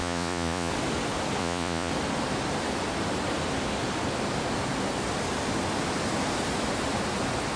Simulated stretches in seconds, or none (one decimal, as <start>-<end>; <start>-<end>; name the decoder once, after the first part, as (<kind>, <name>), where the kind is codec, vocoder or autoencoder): 0.0-0.7 (vocoder, Vocos); 1.4-1.9

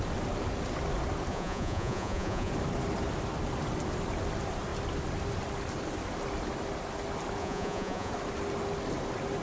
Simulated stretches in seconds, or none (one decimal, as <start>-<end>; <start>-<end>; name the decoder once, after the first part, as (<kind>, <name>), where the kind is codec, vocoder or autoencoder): 1.3-2.5 (vocoder, Vocos); 7.4-8.1